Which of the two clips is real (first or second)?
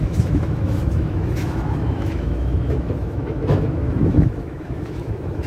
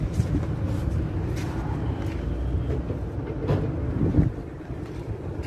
second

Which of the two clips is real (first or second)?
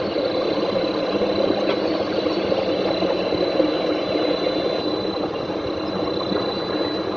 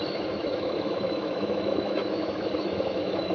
first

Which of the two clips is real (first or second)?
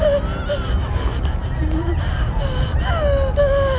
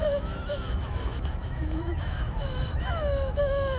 first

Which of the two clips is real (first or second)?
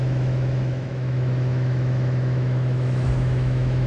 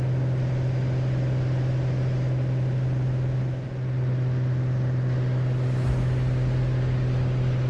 second